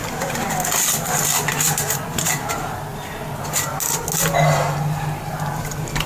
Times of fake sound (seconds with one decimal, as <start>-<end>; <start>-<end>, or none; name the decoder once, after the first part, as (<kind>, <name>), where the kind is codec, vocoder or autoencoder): 0.0-2.5 (vocoder, BigVGAN v2)